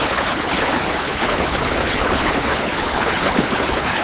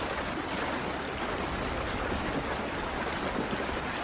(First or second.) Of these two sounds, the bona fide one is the second